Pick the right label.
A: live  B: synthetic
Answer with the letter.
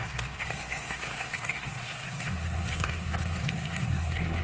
B